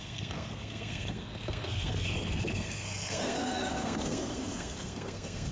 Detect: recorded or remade remade